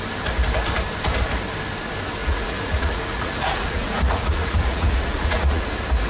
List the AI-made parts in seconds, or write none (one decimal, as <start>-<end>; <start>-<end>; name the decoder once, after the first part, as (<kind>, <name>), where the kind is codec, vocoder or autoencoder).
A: 2.2-5.6 (vocoder, Vocos)